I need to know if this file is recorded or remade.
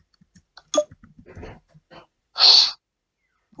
recorded